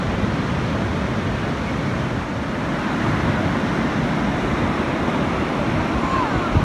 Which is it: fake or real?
real